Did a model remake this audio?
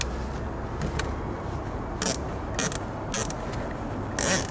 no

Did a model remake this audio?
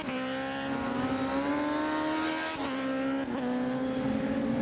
no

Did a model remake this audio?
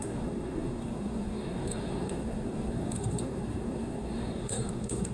yes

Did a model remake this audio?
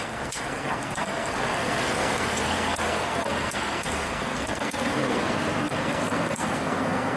yes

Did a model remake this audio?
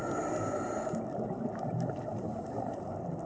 no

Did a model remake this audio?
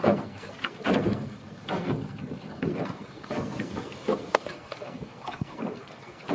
yes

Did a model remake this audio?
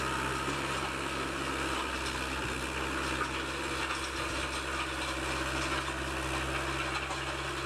no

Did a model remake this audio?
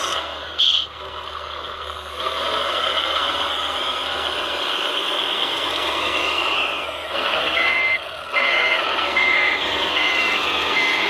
yes